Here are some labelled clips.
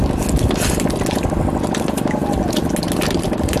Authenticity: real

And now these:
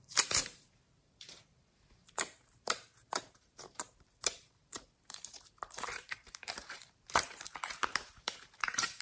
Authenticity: fake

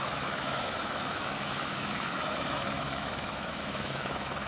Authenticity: fake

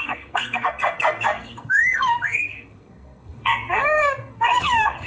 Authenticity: fake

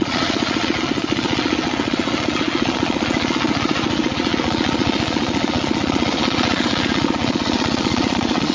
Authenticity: fake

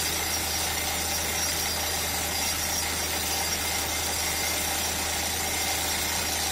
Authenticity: real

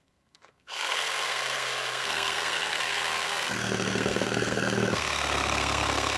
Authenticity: fake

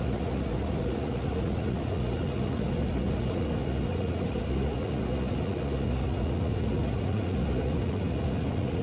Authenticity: fake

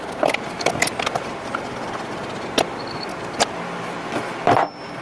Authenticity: real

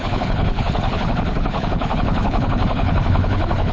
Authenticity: fake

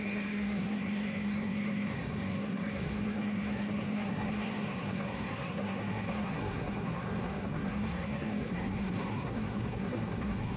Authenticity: fake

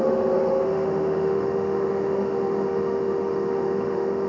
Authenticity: fake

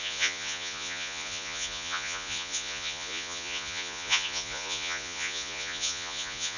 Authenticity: fake